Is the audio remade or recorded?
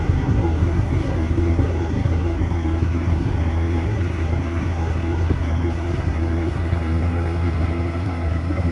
remade